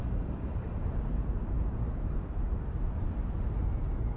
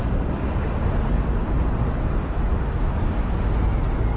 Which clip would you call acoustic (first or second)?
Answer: second